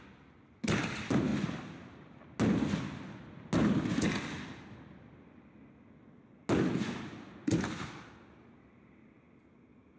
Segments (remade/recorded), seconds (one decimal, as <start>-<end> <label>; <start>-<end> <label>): 0.0-10.0 recorded